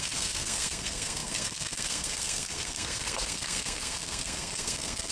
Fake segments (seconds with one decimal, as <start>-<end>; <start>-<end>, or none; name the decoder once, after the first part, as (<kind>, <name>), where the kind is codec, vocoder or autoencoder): 0.0-5.1 (codec, SNAC)